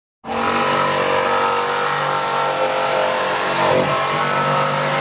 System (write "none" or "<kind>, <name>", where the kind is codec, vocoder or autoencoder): none